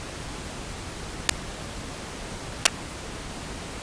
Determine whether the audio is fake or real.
real